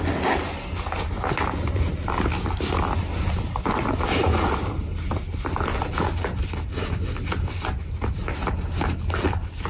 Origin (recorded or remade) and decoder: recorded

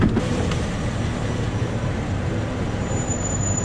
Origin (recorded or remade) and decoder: remade, vocoder, BigVGAN v2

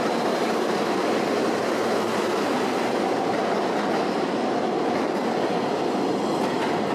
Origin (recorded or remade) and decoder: remade, vocoder, BigVGAN v2